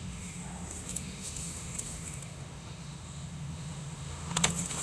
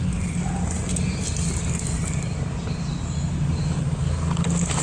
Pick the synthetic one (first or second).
first